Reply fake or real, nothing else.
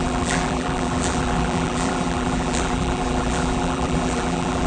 fake